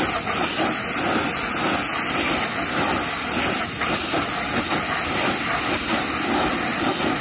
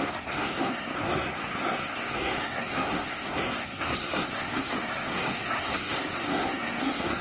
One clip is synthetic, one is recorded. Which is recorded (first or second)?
first